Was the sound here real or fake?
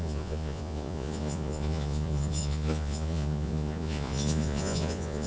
fake